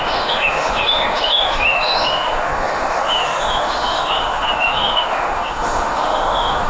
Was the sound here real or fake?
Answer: fake